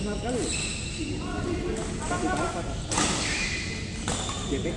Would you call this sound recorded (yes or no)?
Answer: yes